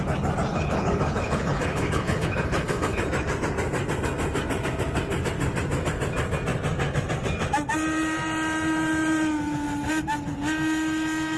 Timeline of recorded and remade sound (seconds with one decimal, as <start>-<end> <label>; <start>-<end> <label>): 0.0-0.5 recorded; 0.5-3.0 remade; 3.0-11.4 recorded